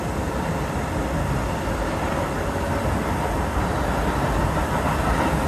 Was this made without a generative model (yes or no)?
yes